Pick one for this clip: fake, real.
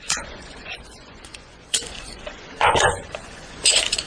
fake